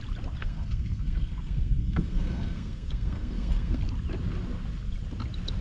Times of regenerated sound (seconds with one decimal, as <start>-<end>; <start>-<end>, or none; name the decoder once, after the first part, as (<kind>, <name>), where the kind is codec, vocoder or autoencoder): 0.4-3.8 (codec, SNAC)